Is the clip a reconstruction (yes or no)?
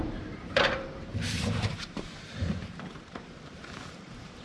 yes